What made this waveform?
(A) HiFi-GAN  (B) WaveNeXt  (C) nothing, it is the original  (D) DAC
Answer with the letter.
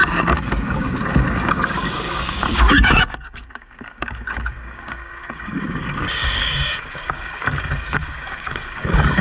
D